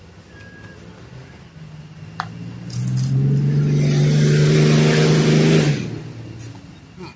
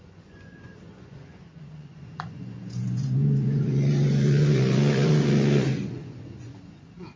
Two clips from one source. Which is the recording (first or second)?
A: first